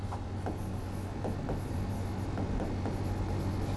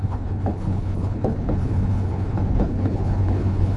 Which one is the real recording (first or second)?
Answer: first